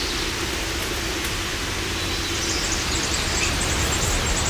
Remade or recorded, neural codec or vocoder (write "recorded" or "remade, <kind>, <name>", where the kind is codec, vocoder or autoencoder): recorded